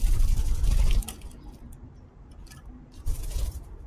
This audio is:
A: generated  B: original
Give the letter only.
A